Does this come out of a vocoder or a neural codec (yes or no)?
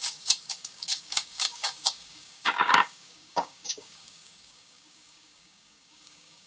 yes